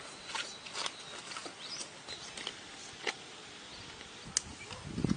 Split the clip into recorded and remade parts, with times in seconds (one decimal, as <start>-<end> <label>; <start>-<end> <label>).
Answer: 0.0-5.2 recorded